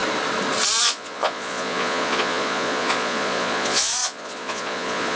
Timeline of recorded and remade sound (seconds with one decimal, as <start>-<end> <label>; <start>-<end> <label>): 0.0-0.8 recorded; 0.8-5.2 remade